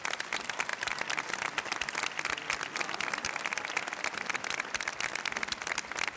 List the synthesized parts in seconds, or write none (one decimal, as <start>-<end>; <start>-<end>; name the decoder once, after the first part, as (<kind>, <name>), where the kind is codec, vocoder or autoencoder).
none